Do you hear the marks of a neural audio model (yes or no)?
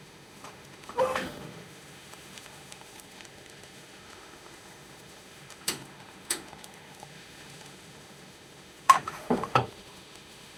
yes